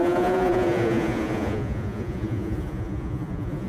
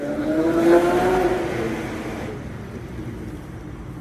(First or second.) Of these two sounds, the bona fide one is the second